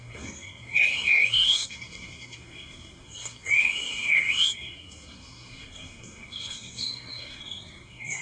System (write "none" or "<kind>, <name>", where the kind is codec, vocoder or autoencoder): codec, SNAC